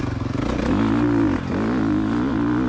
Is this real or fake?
real